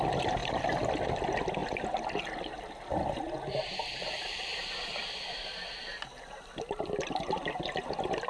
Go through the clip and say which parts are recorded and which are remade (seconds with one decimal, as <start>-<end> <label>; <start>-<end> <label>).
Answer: 0.0-8.3 recorded